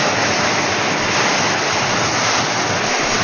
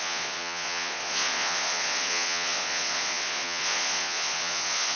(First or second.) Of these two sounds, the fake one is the second